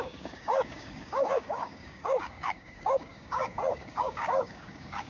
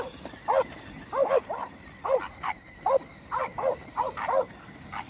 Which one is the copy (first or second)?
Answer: first